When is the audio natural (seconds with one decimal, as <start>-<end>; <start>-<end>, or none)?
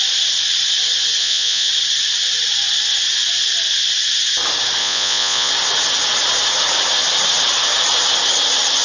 0.0-1.2; 1.7-4.8; 5.5-8.8